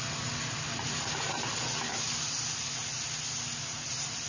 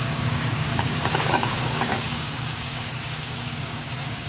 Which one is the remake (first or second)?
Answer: second